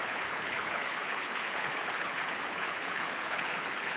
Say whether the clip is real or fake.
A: fake